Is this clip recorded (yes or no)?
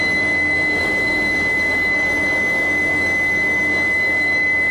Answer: no